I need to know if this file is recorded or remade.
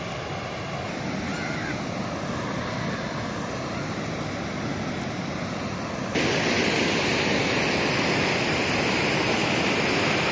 recorded